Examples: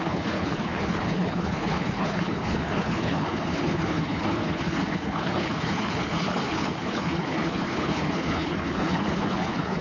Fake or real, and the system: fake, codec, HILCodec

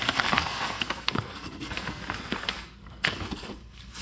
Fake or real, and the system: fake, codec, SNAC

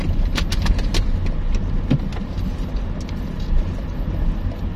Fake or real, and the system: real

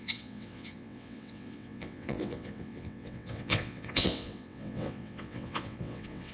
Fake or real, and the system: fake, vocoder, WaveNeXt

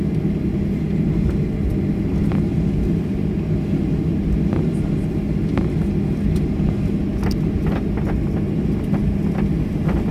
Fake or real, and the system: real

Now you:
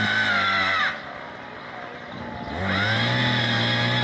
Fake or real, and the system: real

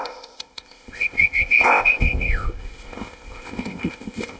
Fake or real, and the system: fake, codec, ZipCodec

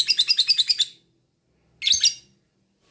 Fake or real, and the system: real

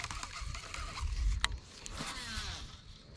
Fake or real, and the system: real